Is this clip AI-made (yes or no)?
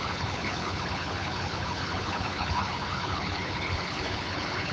yes